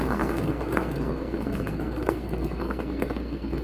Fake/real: fake